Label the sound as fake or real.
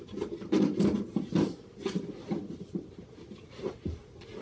real